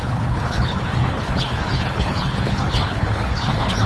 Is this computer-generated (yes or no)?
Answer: yes